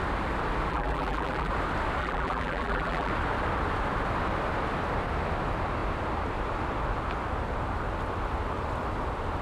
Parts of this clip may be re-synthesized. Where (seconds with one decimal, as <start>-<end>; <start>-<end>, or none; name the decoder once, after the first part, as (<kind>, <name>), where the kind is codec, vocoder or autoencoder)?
0.7-1.5 (vocoder, BigVGAN v2); 2.0-3.1